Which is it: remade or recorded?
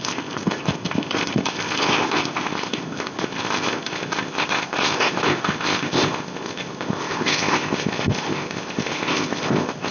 remade